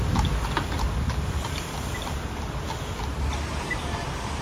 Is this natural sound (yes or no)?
yes